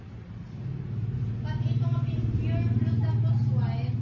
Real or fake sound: real